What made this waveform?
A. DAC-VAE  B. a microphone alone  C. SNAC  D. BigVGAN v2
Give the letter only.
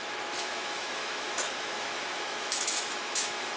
A